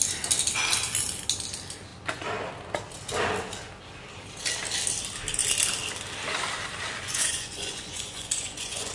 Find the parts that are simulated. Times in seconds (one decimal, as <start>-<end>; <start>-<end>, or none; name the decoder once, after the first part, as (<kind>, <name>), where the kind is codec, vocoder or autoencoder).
7.0-8.9 (vocoder, Vocos)